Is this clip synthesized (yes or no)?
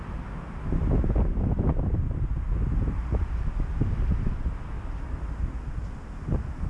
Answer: no